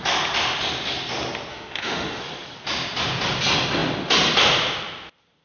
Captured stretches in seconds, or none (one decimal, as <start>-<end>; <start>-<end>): 0.0-1.5; 2.2-5.4